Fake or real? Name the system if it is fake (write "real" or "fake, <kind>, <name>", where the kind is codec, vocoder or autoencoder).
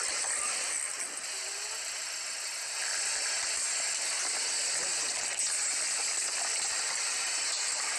real